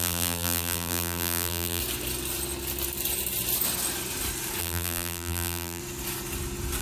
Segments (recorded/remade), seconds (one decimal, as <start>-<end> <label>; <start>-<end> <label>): 0.0-1.8 remade; 1.8-4.6 recorded; 4.6-5.8 remade; 5.8-6.8 recorded